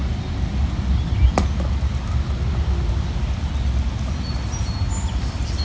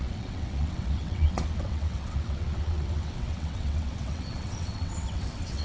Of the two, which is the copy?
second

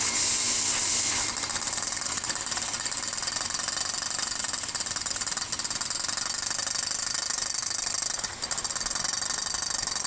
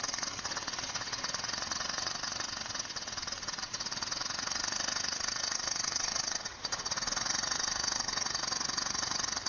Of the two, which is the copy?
second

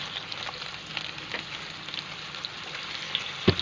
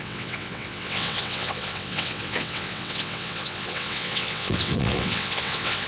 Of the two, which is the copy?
second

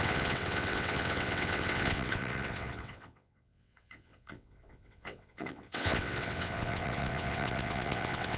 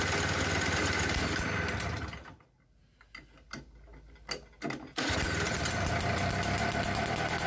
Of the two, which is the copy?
first